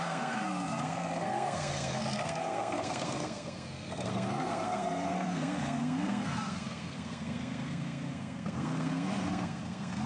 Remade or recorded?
remade